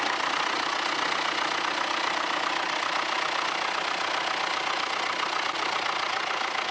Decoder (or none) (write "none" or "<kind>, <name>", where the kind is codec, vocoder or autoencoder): none